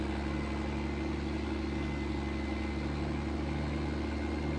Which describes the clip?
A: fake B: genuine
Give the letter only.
B